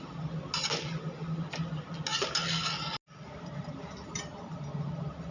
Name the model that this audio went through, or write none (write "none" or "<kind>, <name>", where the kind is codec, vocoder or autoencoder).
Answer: none